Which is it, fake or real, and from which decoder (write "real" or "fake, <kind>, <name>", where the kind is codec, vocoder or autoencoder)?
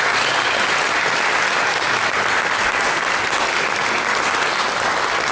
real